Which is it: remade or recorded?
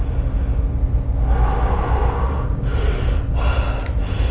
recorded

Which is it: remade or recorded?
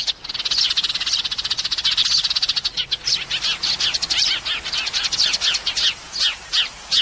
recorded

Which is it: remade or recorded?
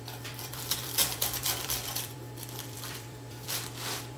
remade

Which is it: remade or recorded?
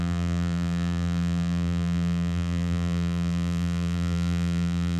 remade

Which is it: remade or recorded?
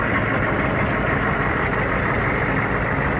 recorded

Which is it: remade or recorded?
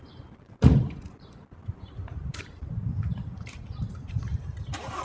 remade